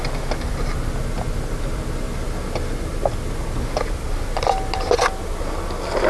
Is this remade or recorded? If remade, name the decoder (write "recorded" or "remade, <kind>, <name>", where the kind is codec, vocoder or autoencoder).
recorded